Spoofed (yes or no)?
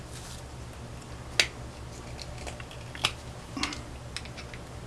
no